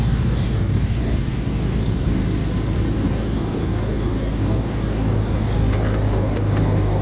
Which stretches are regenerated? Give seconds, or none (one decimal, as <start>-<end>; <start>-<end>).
0.0-2.2; 2.9-7.0